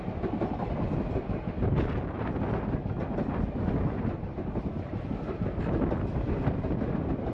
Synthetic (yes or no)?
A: no